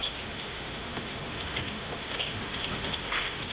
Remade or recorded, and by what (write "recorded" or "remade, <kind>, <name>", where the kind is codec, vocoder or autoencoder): remade, autoencoder, DAC-VAE